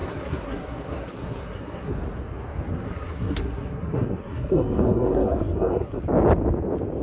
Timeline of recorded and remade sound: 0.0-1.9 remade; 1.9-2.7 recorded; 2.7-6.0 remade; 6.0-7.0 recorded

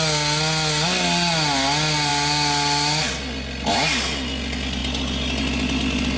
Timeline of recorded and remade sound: 0.0-6.2 recorded